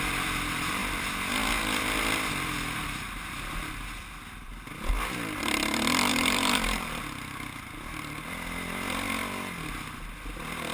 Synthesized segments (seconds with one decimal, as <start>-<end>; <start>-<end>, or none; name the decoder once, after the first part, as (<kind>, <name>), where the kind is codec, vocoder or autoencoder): 6.1-7.0 (vocoder, BigVGAN v2)